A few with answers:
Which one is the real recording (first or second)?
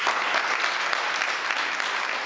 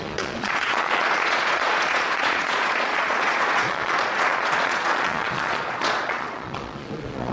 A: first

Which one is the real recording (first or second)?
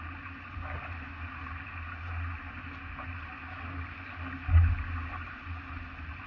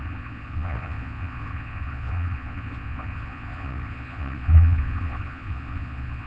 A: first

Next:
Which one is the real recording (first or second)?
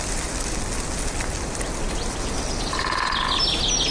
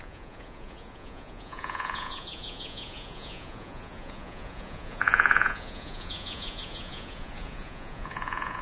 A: first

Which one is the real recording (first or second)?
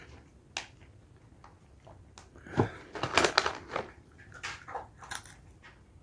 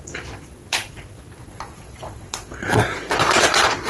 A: first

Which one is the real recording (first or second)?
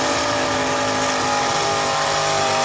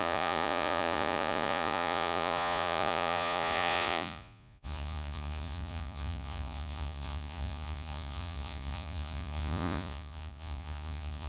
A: first